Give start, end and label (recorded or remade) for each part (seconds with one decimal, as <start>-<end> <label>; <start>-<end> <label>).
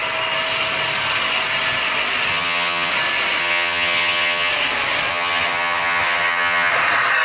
0.0-2.3 recorded; 2.3-2.9 remade; 2.9-3.4 recorded; 3.4-4.5 remade; 4.5-5.1 recorded; 5.1-6.7 remade; 6.7-7.2 recorded